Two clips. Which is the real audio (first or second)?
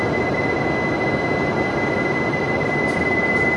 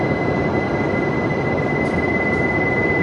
first